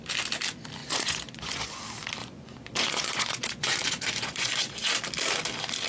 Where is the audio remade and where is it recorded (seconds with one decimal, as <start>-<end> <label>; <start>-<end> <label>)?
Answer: 0.0-0.8 recorded; 0.8-1.8 remade; 1.8-2.2 recorded; 2.2-4.9 remade; 4.9-5.9 recorded